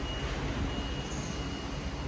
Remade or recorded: recorded